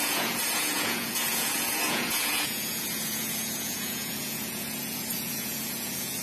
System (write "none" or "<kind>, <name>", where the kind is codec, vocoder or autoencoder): vocoder, Vocos